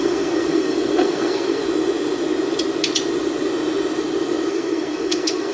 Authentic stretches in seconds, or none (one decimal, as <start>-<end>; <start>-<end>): 1.6-4.5